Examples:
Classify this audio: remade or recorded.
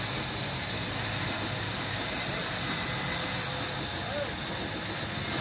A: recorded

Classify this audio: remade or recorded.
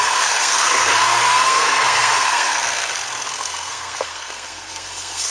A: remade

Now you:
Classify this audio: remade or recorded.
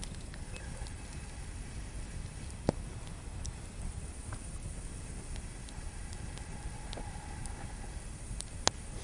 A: recorded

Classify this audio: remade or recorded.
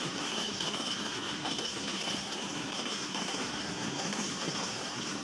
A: remade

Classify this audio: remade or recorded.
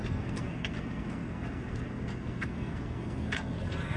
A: remade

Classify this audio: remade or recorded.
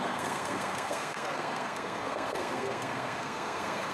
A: remade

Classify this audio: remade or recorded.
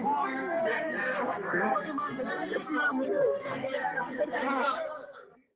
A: remade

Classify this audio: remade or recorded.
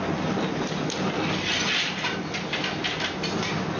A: recorded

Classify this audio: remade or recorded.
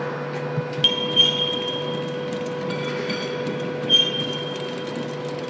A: recorded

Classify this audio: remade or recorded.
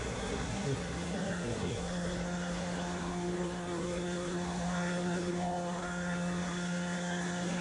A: remade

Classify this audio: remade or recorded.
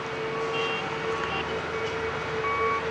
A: recorded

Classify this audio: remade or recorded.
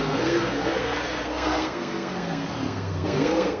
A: remade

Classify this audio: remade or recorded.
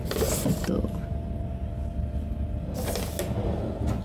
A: recorded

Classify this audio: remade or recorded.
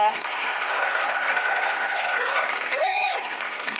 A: remade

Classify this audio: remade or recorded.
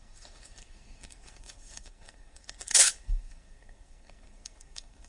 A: remade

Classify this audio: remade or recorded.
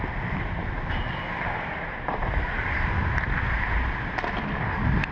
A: recorded